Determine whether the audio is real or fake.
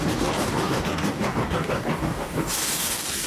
fake